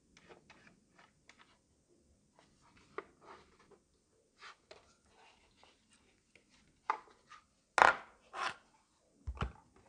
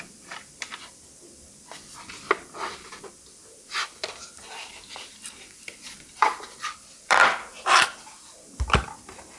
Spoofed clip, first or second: second